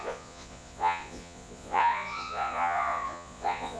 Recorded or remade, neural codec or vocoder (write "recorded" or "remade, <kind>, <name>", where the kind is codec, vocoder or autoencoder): remade, vocoder, Vocos